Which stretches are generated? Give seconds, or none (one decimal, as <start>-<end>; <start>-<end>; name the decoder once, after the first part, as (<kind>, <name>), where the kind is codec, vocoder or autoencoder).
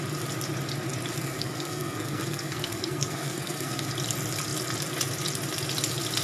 1.2-3.9 (codec, SNAC)